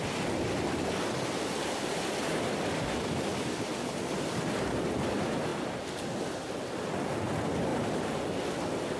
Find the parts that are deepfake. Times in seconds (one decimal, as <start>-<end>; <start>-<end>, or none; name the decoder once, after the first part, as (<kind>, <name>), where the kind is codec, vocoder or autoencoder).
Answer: none